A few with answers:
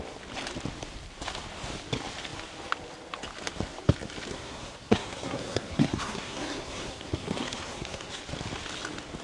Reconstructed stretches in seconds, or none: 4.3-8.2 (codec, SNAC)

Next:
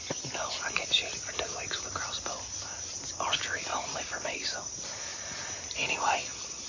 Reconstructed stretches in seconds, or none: 3.7-5.4 (vocoder, BigVGAN v2)

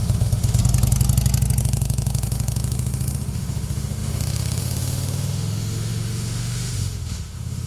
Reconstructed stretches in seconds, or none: 0.0-0.6 (autoencoder, DAC-VAE); 1.6-7.7

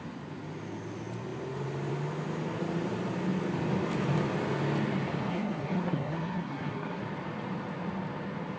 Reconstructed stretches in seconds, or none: 5.3-7.0 (codec, SNAC)

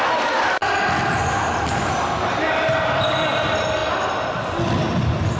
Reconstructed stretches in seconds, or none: none

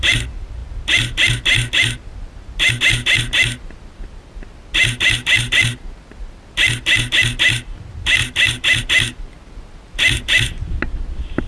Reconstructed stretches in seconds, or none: none